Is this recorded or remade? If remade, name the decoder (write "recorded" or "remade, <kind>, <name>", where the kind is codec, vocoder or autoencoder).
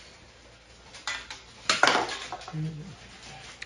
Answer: recorded